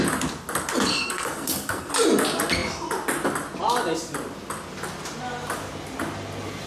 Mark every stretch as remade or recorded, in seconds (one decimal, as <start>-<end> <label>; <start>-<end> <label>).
0.0-0.9 recorded; 0.9-1.9 remade; 1.9-6.7 recorded